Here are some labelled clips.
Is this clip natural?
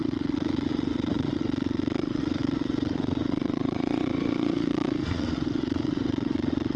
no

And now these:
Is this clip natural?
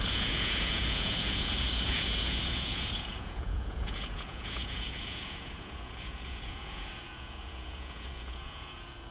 no